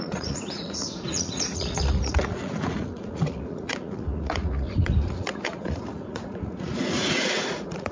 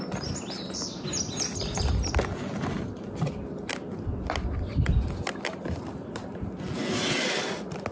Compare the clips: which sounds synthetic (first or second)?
first